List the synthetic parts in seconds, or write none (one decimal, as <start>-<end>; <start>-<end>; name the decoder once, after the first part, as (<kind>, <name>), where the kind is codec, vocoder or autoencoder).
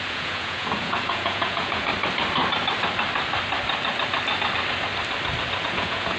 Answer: 0.0-1.9 (vocoder, Vocos); 5.6-6.2